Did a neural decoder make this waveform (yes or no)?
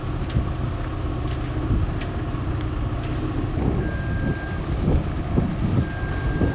no